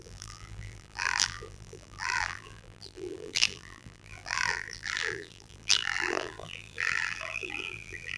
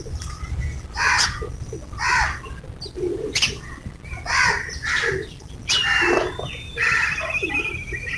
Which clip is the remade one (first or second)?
first